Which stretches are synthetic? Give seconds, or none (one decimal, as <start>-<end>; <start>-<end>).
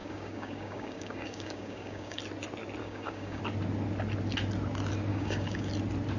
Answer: 0.0-2.2; 2.8-3.4; 5.1-5.7